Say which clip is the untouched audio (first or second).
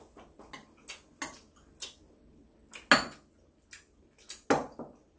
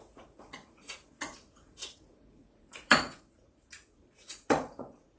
first